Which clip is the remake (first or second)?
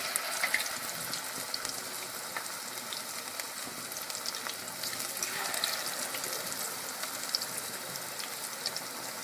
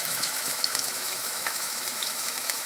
second